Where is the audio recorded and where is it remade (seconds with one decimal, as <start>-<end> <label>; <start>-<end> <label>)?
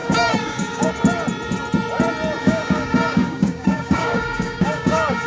0.0-0.9 remade; 0.9-2.4 recorded; 2.4-5.3 remade